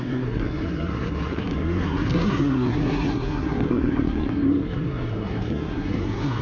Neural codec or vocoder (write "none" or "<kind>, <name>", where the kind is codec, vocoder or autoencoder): codec, SNAC